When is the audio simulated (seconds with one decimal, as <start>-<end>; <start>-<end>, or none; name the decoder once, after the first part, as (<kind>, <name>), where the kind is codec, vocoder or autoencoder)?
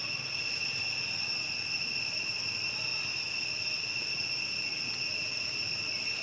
none